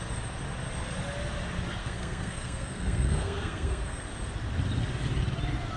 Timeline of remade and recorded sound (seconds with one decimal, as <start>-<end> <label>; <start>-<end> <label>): 0.0-1.8 recorded; 1.8-4.0 remade; 4.0-5.8 recorded